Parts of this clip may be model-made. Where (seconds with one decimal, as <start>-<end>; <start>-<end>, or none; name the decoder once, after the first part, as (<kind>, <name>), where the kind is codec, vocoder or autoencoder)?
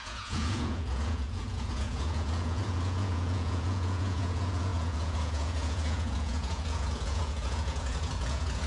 0.0-8.7 (vocoder, Vocos)